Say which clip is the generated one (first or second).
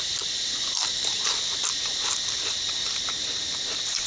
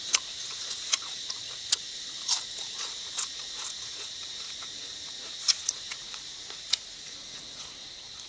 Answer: second